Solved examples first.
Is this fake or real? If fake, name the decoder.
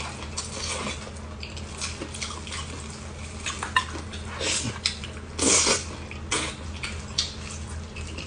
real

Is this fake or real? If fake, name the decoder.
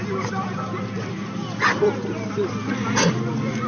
real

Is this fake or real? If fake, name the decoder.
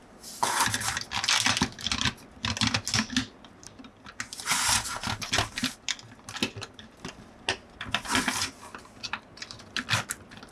real